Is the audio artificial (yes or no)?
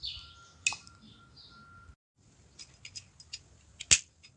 no